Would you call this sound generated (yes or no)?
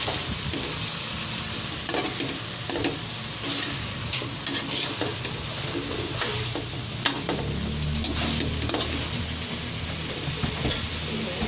no